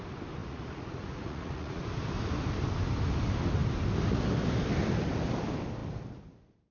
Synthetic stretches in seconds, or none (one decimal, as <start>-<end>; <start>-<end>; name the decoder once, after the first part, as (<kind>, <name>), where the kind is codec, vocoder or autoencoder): 0.4-1.8 (vocoder, Vocos)